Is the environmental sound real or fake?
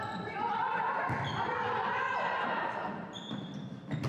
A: fake